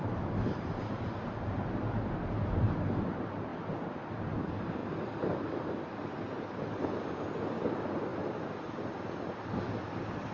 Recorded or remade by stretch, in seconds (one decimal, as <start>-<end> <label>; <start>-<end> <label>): 0.0-4.8 recorded; 4.8-6.2 remade; 6.2-8.1 recorded; 8.1-9.1 remade; 9.1-10.3 recorded